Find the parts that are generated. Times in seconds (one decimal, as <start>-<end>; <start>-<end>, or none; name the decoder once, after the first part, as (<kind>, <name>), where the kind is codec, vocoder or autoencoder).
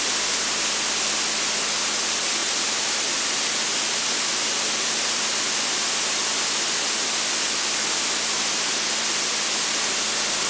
none